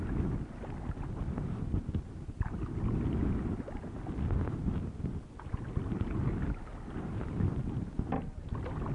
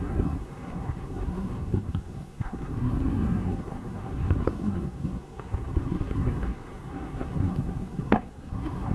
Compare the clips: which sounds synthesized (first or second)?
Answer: second